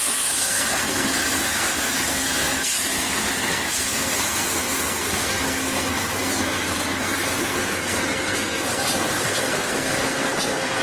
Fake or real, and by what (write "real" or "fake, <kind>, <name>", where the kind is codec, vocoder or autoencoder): fake, codec, SNAC